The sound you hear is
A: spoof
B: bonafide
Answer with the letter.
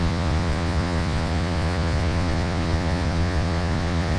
A